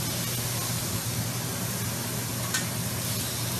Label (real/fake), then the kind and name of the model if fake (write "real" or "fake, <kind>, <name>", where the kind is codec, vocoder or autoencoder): real